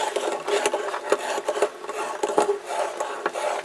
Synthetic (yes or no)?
no